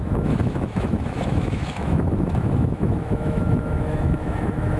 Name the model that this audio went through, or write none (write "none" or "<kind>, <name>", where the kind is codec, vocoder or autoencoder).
autoencoder, DAC-VAE